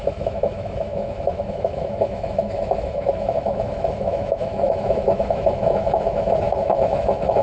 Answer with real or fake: fake